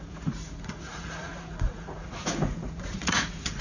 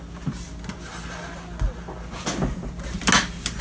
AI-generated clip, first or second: first